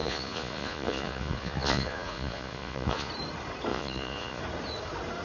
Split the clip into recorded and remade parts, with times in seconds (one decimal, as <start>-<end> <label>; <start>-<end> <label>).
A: 0.0-3.1 remade; 3.1-3.7 recorded; 3.7-4.4 remade; 4.4-5.2 recorded